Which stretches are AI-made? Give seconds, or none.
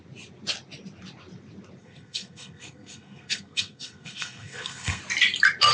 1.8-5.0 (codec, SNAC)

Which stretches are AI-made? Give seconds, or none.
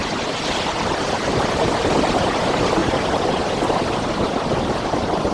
none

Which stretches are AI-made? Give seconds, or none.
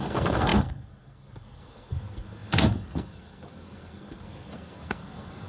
0.0-5.5 (codec, SNAC)